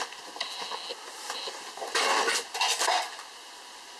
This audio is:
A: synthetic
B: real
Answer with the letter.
B